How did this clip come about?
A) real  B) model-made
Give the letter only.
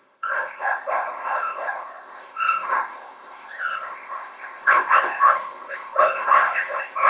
B